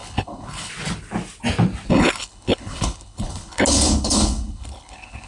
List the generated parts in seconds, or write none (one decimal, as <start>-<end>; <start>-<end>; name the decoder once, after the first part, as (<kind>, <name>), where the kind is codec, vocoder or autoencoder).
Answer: 0.0-0.7 (codec, HILCodec); 1.9-5.3